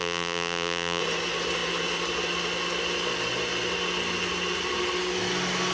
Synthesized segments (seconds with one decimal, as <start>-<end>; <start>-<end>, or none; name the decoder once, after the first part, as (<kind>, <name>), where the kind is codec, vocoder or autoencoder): 0.0-1.0 (vocoder, BigVGAN v2)